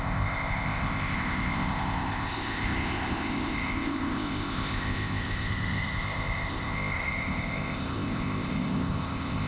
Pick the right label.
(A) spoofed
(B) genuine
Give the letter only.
A